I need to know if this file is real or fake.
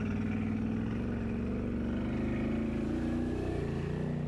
real